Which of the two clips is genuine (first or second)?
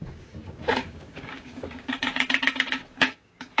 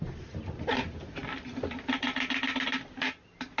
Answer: second